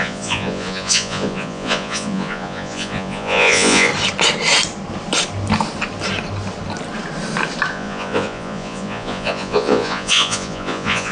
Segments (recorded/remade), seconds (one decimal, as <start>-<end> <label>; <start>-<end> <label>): 0.0-3.9 remade; 3.9-7.7 recorded; 7.7-11.1 remade